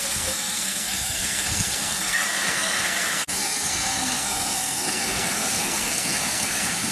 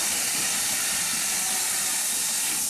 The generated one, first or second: first